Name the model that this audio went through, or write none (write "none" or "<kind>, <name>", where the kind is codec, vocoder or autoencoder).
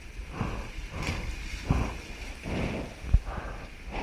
none